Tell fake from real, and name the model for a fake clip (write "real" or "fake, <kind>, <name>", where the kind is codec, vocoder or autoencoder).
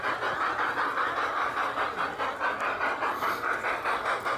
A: real